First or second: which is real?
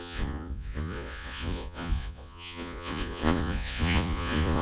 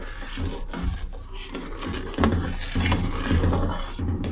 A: second